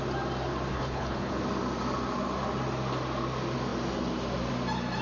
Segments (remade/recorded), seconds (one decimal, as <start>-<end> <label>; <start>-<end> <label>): 0.0-0.7 recorded; 0.7-1.3 remade; 1.3-5.0 recorded